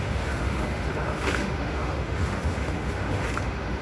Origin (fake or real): fake